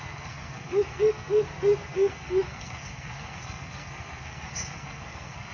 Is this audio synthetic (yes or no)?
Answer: yes